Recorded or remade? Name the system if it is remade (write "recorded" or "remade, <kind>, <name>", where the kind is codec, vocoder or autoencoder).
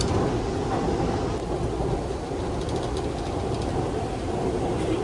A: recorded